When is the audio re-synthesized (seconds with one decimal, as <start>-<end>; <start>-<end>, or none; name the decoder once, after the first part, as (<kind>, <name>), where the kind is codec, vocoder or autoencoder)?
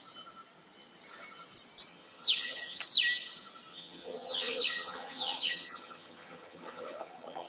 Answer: 1.9-2.8 (vocoder, HiFi-GAN); 3.7-7.5